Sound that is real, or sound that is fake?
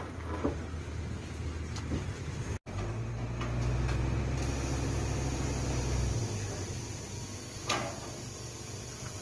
real